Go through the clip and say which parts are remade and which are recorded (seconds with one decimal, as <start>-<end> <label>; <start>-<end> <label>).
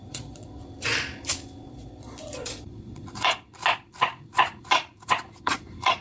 0.0-0.6 remade; 0.6-1.7 recorded; 1.7-3.6 remade; 3.6-5.4 recorded; 5.4-6.0 remade